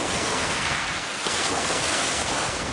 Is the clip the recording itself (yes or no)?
no